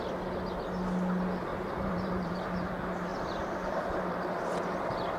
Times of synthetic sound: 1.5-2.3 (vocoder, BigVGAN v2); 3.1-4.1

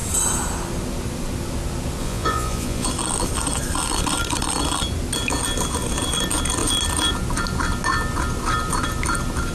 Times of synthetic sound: 2.0-2.9 (vocoder, Vocos)

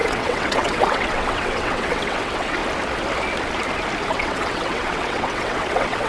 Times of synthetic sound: 0.0-2.6 (vocoder, WaveNeXt); 4.1-6.1

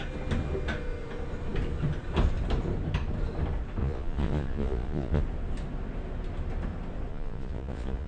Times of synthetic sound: 3.8-5.2 (vocoder, Vocos); 7.1-8.1

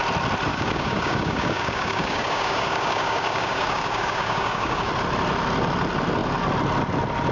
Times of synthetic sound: 0.5-4.9 (codec, DAC)

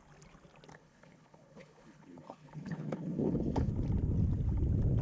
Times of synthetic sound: 0.7-3.7 (codec, HILCodec)

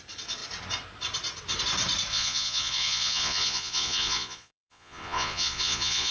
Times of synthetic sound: 2.1-6.1 (vocoder, Vocos)

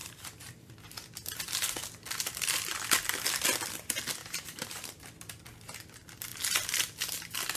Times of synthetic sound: 0.0-0.7 (vocoder, BigVGAN v2); 4.2-5.0